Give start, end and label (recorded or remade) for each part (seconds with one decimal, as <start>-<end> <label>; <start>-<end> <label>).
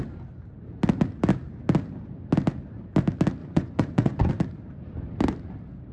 0.0-3.4 recorded; 3.4-4.3 remade; 4.3-5.9 recorded